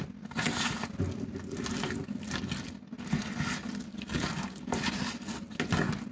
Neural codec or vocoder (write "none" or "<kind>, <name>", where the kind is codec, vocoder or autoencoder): none